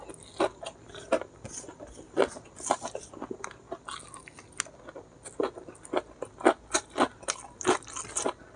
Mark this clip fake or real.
real